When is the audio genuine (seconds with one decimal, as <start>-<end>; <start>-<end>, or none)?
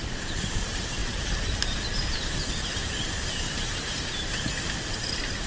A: none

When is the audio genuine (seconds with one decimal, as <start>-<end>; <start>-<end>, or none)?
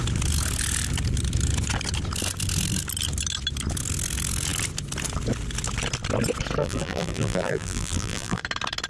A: 0.0-6.6; 8.4-8.9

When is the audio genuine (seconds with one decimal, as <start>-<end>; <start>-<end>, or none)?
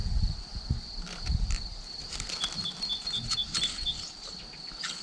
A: 0.0-2.4; 3.1-5.0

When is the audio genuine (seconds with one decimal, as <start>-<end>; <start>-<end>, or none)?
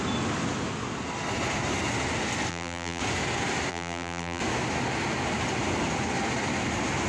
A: 0.0-2.5; 3.0-3.7; 4.4-7.1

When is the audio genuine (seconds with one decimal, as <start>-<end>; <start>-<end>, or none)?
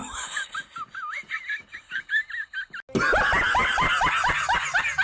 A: 0.0-5.0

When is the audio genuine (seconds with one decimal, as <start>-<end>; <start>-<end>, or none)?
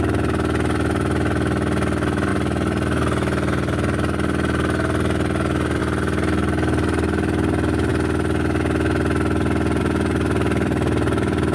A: 0.0-11.5